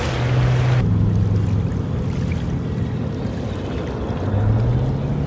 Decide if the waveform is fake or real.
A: real